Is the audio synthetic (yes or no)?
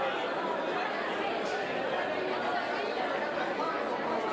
no